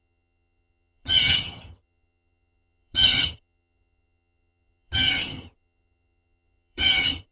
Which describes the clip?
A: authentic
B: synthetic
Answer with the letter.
B